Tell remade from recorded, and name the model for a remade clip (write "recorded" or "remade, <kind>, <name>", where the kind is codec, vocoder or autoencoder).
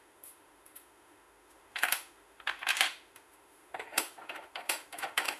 remade, autoencoder, DAC-VAE